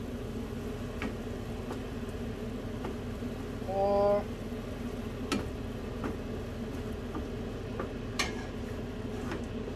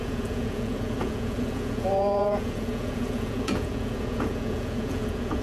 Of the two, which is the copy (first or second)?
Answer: second